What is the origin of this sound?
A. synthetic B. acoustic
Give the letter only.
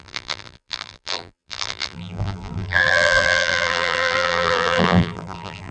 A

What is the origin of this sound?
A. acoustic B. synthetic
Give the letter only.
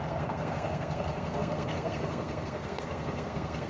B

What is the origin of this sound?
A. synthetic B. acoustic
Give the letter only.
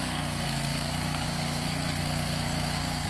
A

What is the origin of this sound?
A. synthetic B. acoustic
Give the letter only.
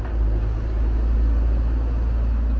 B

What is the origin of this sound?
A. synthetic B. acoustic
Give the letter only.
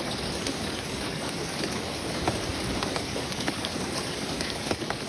A